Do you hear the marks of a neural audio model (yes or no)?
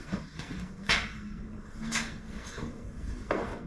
yes